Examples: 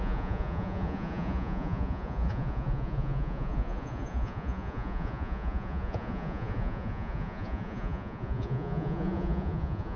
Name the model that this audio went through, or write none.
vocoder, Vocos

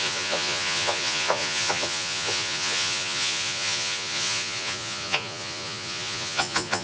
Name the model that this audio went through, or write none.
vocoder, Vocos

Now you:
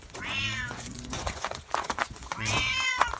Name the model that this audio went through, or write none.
vocoder, Vocos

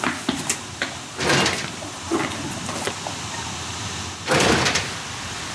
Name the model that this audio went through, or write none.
none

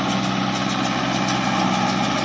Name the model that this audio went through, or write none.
none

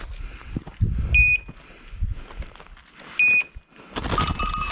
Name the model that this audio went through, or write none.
none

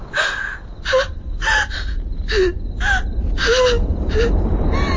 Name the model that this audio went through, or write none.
none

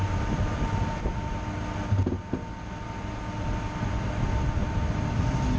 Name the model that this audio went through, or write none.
none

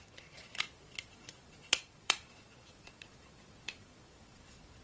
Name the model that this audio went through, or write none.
vocoder, Vocos